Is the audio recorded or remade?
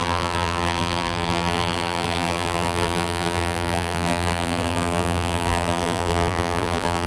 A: remade